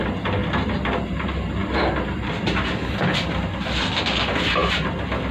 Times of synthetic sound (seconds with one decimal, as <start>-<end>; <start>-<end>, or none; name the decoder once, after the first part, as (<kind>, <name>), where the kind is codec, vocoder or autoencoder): 0.0-0.4 (vocoder, BigVGAN v2); 1.0-1.6; 4.0-5.3